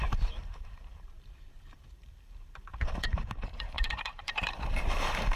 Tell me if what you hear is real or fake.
fake